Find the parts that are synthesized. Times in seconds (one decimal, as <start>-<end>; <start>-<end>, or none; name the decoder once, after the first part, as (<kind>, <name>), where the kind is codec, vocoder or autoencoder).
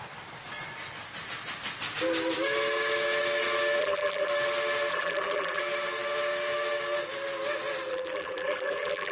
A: 3.8-4.3 (vocoder, BigVGAN v2); 4.9-5.6; 7.9-9.1